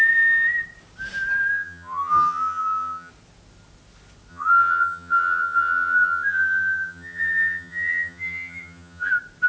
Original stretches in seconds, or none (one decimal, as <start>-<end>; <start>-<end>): 0.0-1.5; 3.1-4.3; 9.1-9.5